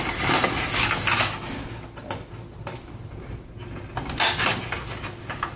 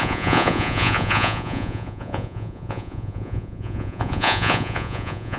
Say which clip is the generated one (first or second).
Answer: second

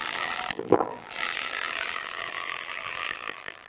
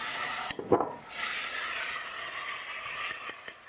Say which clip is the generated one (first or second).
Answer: first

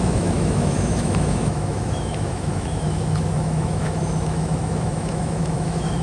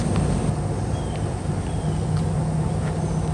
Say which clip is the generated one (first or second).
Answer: first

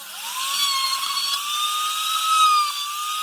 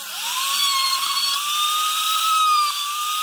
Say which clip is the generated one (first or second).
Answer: second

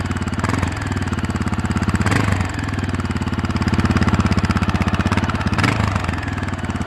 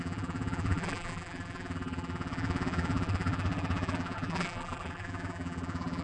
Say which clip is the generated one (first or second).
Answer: second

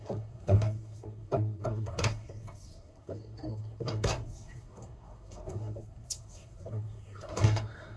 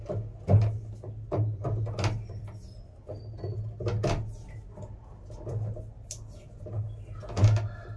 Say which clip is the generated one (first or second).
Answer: first